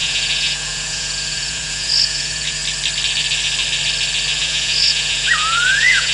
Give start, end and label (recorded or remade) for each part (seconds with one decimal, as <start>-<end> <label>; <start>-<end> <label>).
0.0-2.6 remade; 2.6-4.4 recorded; 4.4-6.1 remade

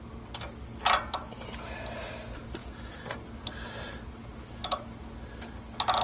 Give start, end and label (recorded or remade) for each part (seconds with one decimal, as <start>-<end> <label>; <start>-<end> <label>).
0.0-2.6 recorded; 2.6-3.2 remade; 3.2-6.0 recorded

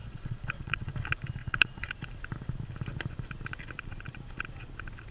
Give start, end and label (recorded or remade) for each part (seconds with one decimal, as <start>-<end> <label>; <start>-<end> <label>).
0.0-0.9 remade; 0.9-1.4 recorded; 1.4-1.9 remade; 1.9-5.1 recorded